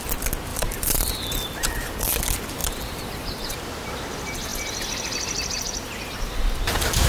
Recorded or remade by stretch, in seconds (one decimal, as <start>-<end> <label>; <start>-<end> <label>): 0.0-0.5 recorded; 0.5-1.9 remade; 1.9-2.6 recorded; 2.6-3.5 remade; 3.5-4.5 recorded; 4.5-6.4 remade; 6.4-7.1 recorded